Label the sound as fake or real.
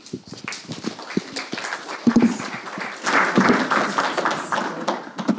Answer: real